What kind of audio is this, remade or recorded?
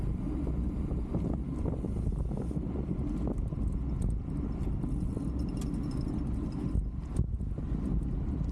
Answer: recorded